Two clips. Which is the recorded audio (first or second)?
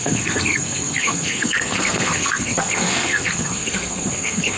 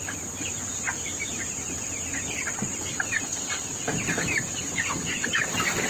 second